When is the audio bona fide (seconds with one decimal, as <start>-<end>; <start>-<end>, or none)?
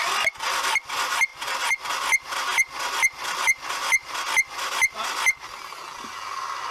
0.0-1.3; 1.8-6.7